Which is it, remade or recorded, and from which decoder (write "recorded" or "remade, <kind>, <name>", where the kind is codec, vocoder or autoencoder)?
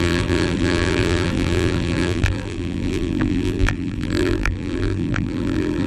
remade, vocoder, BigVGAN v2